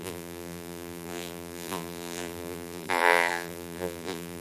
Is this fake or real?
fake